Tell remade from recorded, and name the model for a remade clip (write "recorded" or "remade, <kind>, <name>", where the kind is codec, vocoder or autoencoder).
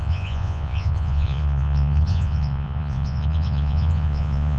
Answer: remade, vocoder, Vocos